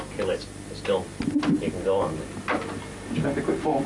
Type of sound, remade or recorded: recorded